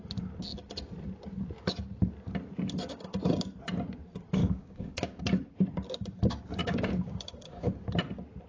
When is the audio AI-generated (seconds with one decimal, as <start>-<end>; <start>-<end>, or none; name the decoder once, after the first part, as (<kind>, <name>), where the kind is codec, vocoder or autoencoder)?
4.4-5.2 (codec, DAC); 6.6-7.7